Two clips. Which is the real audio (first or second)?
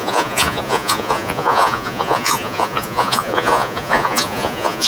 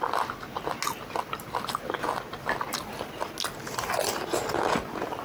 second